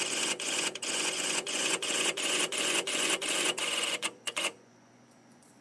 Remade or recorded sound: remade